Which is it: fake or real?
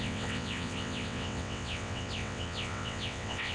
fake